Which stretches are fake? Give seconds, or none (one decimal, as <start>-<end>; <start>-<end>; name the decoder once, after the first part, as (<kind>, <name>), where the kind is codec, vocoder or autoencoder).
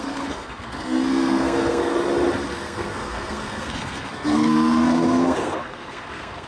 0.0-1.9 (codec, SNAC); 2.5-6.5